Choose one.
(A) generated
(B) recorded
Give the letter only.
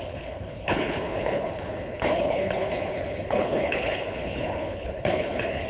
A